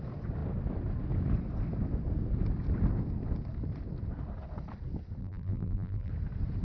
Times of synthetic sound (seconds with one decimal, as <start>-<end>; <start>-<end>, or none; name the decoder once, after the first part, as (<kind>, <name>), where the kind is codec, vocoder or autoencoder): 5.2-6.1 (vocoder, BigVGAN v2)